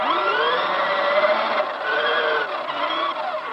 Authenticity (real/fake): real